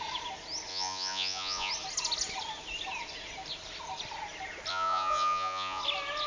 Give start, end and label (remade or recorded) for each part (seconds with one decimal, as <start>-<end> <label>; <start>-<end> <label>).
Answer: 0.0-0.7 recorded; 0.7-1.7 remade; 1.7-4.7 recorded; 4.7-5.8 remade; 5.8-6.3 recorded